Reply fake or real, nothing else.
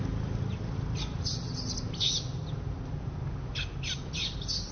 real